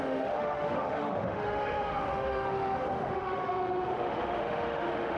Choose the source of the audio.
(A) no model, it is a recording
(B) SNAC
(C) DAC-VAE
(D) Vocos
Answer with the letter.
C